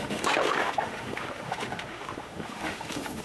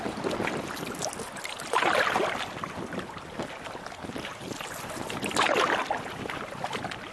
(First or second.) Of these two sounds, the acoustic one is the second